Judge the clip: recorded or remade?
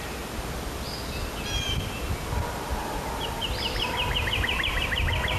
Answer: recorded